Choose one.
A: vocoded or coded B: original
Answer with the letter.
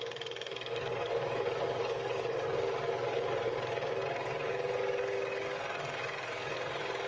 A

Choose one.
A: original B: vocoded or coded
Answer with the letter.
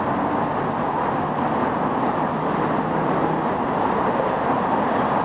A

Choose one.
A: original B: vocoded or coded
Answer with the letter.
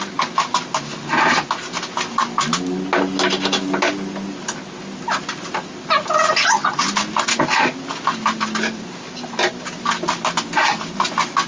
A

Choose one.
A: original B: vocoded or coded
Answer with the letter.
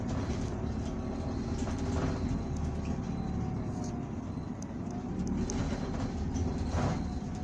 A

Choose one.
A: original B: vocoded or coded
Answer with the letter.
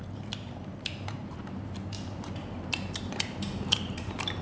B